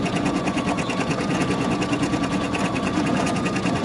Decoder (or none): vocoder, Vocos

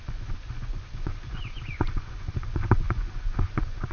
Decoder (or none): vocoder, Vocos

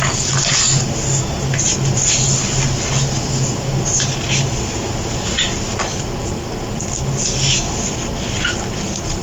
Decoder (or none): none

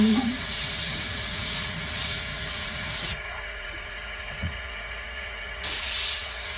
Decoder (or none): vocoder, Vocos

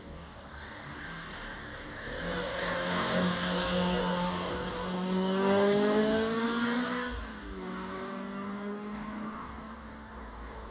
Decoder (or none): codec, DAC